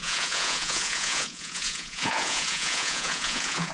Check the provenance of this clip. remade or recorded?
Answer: remade